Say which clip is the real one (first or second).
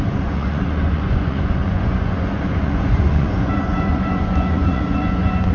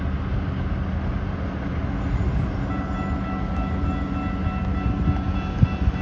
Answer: second